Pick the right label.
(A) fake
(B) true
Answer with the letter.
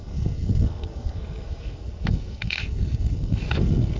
A